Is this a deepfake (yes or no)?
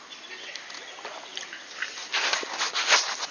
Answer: no